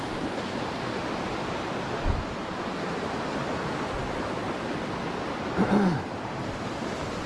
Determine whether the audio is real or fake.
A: real